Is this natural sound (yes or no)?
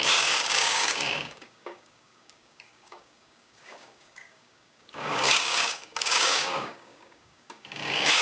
no